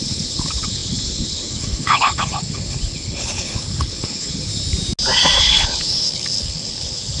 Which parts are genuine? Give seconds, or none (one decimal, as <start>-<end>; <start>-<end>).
4.5-5.4